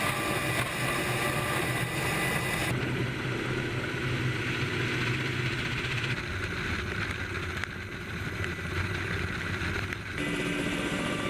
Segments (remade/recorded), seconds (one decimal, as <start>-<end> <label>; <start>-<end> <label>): 0.0-11.3 recorded